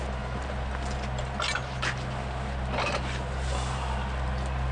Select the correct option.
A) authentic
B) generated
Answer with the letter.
A